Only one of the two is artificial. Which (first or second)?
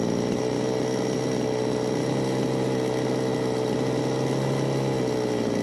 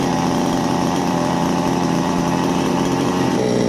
second